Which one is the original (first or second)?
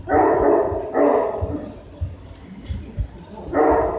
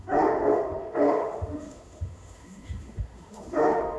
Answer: first